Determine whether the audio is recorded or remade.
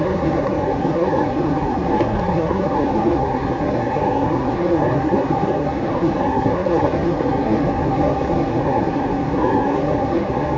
remade